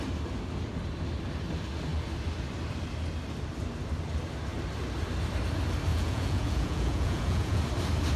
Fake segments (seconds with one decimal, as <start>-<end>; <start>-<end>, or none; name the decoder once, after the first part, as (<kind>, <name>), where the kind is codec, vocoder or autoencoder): 5.9-7.6 (vocoder, Vocos)